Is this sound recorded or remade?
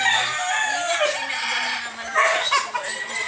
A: recorded